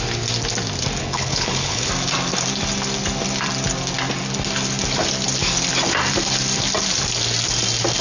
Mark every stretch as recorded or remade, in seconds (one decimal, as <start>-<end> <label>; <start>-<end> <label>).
0.0-1.0 recorded; 1.0-1.9 remade; 1.9-8.0 recorded